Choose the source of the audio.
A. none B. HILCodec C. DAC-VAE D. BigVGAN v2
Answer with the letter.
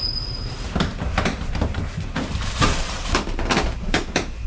D